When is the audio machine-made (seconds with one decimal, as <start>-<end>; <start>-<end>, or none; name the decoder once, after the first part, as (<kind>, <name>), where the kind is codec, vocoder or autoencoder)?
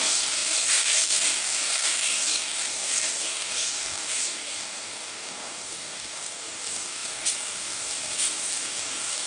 0.0-9.3 (codec, DAC)